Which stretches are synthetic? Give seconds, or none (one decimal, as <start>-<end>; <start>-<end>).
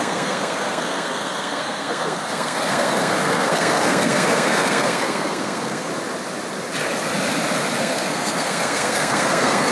0.0-5.9; 7.8-9.7